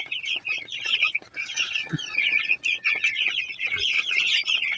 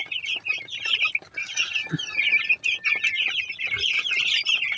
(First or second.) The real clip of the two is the second